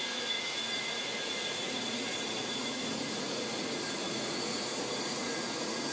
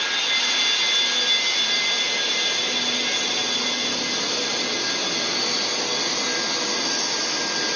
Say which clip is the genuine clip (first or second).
second